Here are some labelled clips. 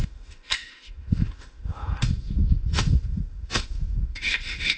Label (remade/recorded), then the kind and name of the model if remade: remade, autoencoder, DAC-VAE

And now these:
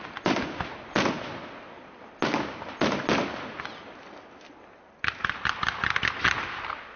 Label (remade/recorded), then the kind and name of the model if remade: recorded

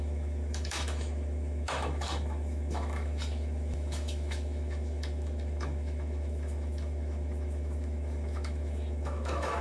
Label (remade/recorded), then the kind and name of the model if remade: remade, autoencoder, DAC-VAE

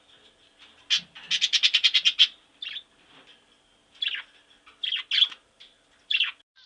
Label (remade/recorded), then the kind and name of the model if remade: recorded